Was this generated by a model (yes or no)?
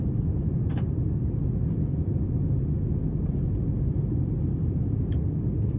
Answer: no